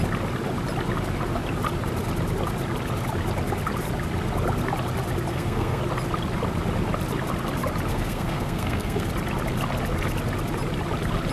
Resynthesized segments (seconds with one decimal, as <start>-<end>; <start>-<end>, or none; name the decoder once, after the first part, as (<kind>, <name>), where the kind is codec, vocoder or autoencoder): 5.3-5.8 (codec, SNAC); 7.9-9.1